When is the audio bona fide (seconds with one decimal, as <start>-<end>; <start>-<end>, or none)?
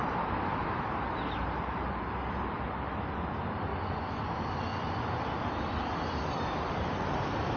0.0-3.7; 4.2-4.7; 5.2-7.6